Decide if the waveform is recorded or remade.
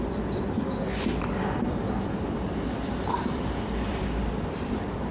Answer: remade